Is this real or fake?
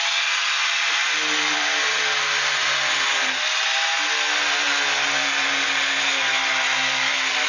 real